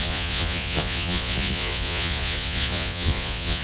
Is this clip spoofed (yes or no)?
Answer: yes